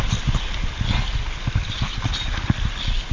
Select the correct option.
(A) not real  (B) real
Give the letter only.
B